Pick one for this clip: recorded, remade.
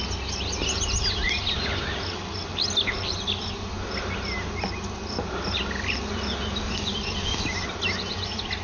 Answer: recorded